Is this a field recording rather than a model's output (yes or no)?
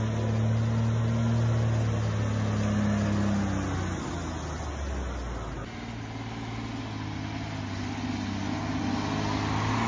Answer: yes